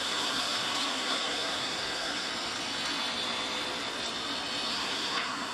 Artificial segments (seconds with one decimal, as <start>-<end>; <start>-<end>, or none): 0.0-2.3; 4.7-5.5